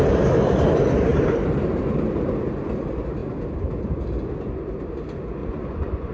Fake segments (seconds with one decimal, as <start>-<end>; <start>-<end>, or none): 5.4-6.1